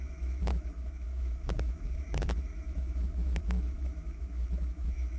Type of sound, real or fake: fake